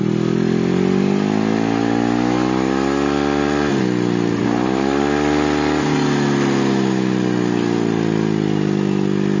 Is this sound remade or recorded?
recorded